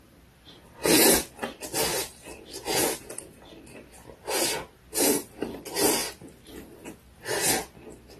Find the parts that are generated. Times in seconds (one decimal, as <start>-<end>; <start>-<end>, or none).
none